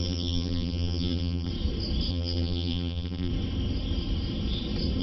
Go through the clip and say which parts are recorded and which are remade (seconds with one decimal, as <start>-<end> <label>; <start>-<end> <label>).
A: 0.0-1.5 remade; 1.5-2.1 recorded; 2.1-3.3 remade; 3.3-5.0 recorded